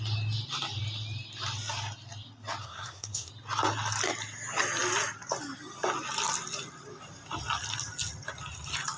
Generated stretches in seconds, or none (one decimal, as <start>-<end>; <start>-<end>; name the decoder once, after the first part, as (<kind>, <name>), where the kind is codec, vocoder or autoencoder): 2.6-3.3 (codec, SNAC)